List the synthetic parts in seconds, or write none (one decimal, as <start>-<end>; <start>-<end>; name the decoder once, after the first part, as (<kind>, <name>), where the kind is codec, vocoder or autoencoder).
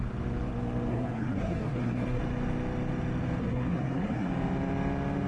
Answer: 0.9-2.2 (codec, SNAC); 3.4-4.3